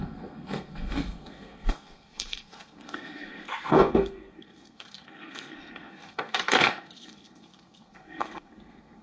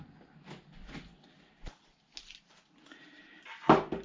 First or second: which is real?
second